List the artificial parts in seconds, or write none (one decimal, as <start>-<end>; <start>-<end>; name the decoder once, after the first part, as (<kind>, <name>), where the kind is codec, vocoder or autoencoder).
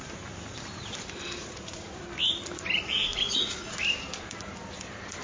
1.4-2.0 (vocoder, Vocos); 3.1-3.7